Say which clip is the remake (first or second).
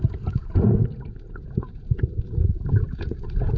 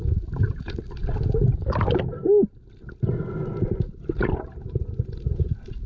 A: first